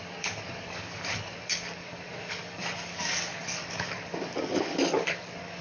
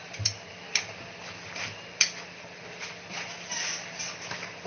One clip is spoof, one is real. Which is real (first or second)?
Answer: second